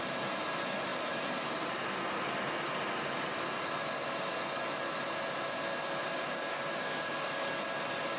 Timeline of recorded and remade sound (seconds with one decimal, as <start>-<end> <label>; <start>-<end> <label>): 0.0-6.0 recorded; 6.0-7.5 remade; 7.5-8.2 recorded

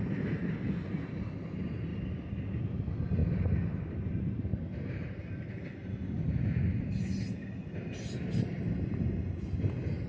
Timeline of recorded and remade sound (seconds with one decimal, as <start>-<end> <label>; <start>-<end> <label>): 0.0-10.1 recorded

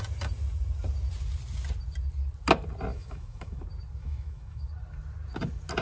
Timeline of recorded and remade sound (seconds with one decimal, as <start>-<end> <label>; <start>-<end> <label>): 0.0-2.9 recorded; 2.9-3.6 remade; 3.6-4.0 recorded; 4.0-4.7 remade; 4.7-5.8 recorded